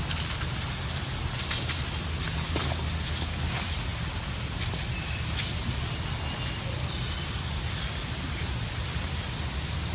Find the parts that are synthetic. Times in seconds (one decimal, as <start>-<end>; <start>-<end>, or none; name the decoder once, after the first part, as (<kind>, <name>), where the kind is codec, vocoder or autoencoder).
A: none